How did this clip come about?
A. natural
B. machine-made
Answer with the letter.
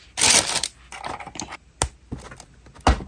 A